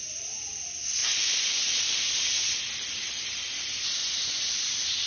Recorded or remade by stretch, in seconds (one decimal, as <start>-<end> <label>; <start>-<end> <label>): 0.0-1.0 recorded; 1.0-1.7 remade; 1.7-4.0 recorded; 4.0-4.5 remade; 4.5-5.1 recorded